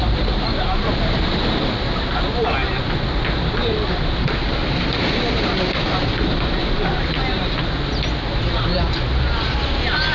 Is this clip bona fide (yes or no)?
yes